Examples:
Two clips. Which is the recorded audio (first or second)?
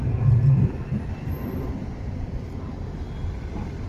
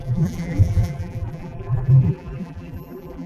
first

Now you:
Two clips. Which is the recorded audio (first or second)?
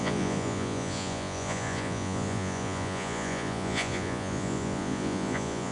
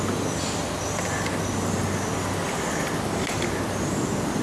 second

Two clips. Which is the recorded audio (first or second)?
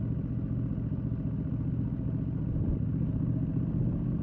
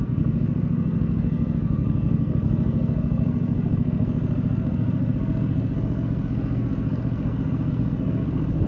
first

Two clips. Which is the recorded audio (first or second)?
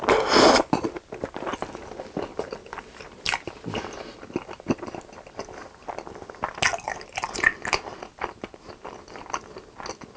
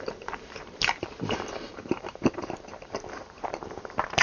first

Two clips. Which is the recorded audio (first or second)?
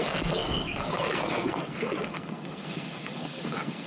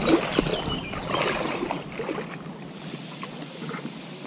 second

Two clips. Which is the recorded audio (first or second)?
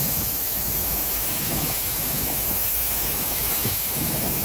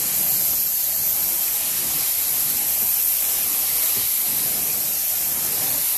second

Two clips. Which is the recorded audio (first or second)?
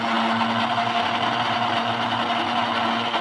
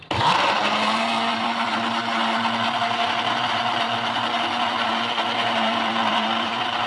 first